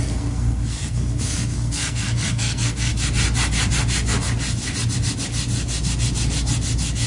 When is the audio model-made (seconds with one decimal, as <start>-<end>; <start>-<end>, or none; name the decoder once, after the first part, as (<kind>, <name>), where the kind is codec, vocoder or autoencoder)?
0.0-2.9 (codec, SNAC)